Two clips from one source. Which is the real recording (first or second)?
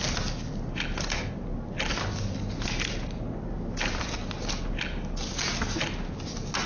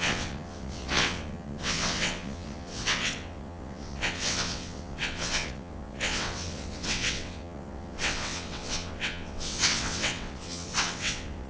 first